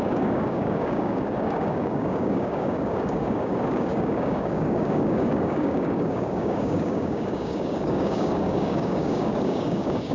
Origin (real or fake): fake